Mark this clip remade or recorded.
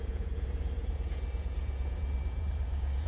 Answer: remade